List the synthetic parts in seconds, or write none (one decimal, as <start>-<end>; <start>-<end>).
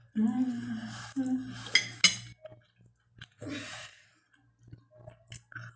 3.3-4.1